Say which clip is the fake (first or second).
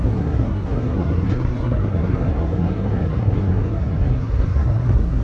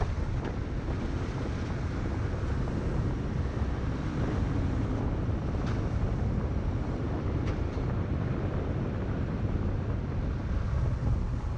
first